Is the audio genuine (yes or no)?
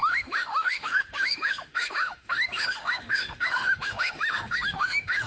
no